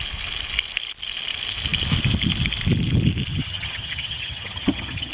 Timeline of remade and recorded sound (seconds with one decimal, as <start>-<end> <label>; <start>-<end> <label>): 0.0-3.3 recorded; 3.3-5.1 remade